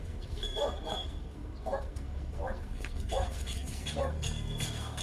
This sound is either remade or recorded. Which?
remade